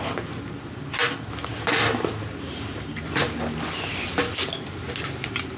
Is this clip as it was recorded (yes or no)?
yes